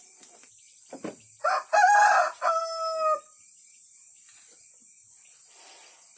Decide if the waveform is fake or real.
real